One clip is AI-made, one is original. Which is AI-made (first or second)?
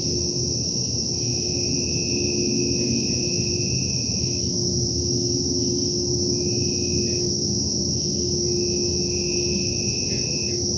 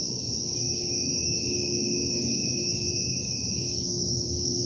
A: second